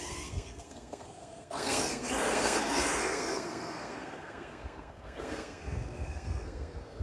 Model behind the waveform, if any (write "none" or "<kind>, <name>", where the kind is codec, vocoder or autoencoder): codec, SNAC